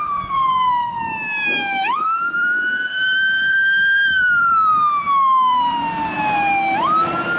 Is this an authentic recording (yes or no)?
no